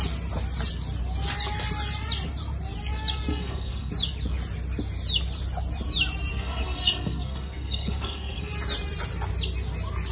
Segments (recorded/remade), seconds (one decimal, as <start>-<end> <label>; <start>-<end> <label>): 0.0-3.3 recorded; 3.3-3.9 remade; 3.9-6.3 recorded; 6.3-8.5 remade; 8.5-10.1 recorded